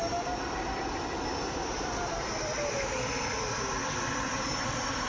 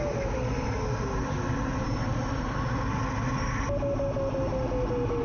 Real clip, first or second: second